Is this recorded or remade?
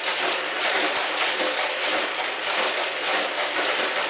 recorded